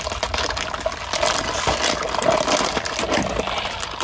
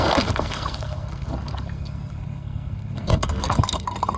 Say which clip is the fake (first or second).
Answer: second